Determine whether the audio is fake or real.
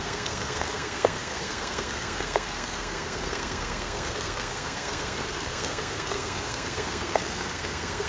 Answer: fake